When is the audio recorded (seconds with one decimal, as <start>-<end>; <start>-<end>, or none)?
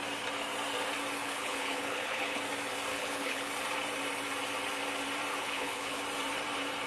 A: 0.0-1.2; 2.4-2.9; 3.5-5.3; 6.0-6.9